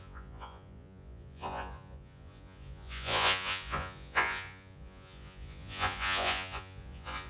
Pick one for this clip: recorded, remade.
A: remade